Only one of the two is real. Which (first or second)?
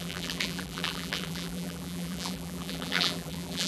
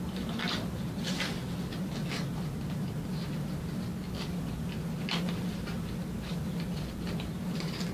second